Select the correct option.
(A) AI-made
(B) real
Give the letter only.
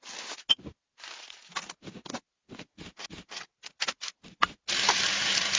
B